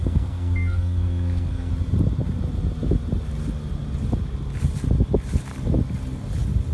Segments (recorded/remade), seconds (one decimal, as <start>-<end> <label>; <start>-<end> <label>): 0.0-1.7 remade; 1.7-6.7 recorded